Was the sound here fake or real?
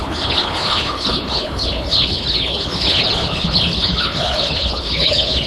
fake